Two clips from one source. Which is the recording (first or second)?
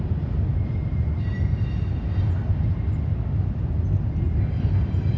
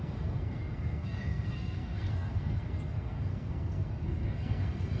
first